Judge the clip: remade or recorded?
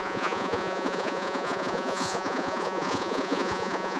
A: remade